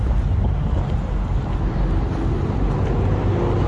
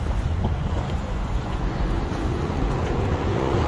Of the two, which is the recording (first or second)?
first